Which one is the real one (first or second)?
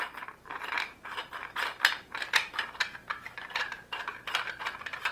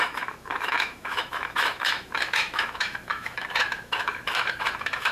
first